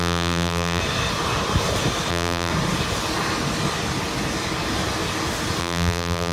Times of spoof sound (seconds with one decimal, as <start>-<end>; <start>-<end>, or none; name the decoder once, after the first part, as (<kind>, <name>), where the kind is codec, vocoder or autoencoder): 0.0-0.8 (vocoder, BigVGAN v2); 2.1-2.5; 5.6-6.3